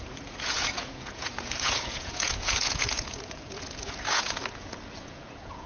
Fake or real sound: fake